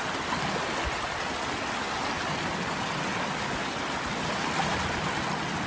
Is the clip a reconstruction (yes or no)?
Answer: no